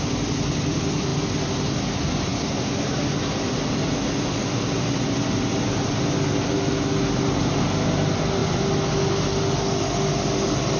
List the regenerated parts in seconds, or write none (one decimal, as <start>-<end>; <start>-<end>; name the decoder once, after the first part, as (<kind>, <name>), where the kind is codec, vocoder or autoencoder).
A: none